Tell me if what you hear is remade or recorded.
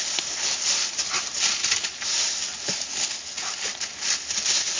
recorded